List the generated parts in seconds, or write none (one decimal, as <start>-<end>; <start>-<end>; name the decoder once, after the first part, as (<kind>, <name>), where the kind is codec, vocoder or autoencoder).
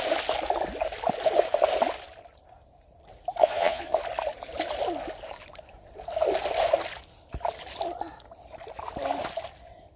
3.4-4.0 (vocoder, Vocos)